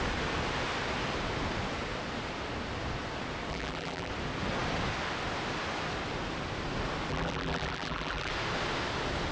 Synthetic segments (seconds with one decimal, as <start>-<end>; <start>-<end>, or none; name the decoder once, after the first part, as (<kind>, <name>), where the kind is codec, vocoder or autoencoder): 3.5-4.1 (vocoder, BigVGAN v2); 7.1-8.3